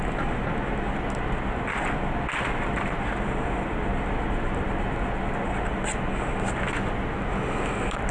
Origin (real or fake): real